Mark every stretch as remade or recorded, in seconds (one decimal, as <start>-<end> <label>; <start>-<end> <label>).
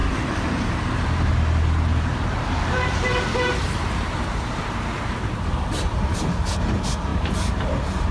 0.0-1.3 remade; 1.3-2.1 recorded; 2.1-6.2 remade; 6.2-7.1 recorded; 7.1-8.1 remade